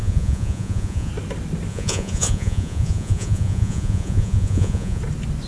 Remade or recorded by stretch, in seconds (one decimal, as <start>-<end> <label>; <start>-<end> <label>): 0.0-1.1 remade; 1.1-1.7 recorded; 1.7-5.0 remade; 5.0-5.5 recorded